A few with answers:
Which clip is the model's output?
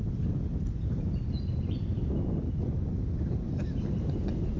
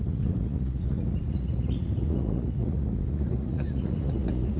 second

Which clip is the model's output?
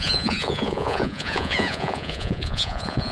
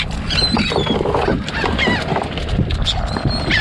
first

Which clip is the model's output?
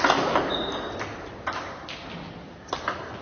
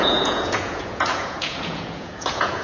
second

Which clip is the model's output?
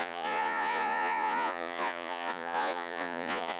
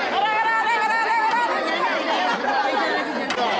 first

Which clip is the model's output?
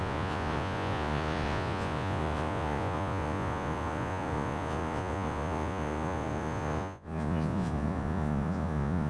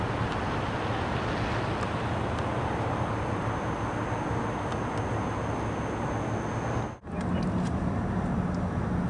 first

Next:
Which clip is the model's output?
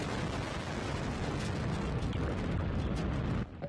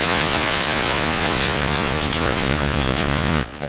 second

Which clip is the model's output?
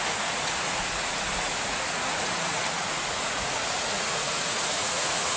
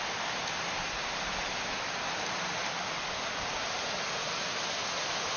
first